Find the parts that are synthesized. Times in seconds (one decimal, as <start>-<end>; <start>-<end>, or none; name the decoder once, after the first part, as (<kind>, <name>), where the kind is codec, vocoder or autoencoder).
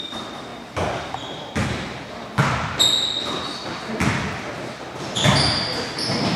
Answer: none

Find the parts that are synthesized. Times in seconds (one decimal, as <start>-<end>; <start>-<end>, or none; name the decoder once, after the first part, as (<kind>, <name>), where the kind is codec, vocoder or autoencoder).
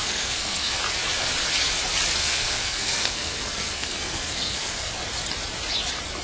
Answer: 0.0-0.8 (codec, SNAC); 2.2-4.9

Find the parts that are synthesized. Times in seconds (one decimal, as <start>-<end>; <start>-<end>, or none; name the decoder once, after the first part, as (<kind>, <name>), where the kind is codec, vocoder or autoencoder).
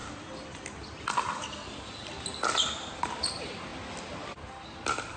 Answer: none